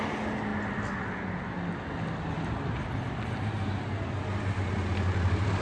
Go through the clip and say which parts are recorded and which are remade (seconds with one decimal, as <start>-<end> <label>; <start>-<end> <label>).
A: 0.0-5.6 recorded

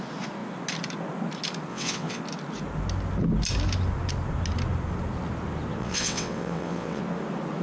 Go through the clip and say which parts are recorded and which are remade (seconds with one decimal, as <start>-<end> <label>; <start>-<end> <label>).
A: 0.0-1.7 recorded; 1.7-2.2 remade; 2.2-5.8 recorded; 5.8-7.0 remade; 7.0-7.6 recorded